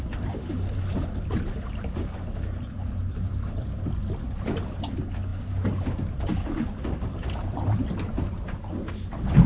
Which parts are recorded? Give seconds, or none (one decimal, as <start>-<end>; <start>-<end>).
0.0-9.5